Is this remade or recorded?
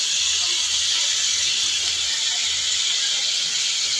recorded